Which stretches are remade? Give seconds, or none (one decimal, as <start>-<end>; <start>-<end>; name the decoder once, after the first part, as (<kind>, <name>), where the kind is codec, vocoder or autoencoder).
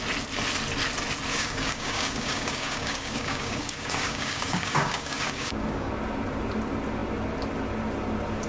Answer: 1.3-5.9 (codec, DAC)